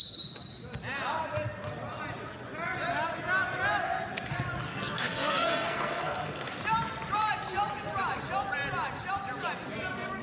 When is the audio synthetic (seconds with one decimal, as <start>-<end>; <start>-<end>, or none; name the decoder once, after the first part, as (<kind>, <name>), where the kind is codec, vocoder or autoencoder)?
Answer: 4.7-6.5 (codec, SNAC)